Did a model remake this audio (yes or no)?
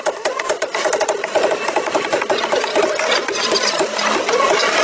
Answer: no